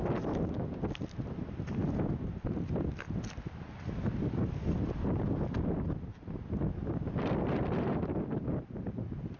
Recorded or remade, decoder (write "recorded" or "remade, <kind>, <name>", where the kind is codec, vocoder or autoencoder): recorded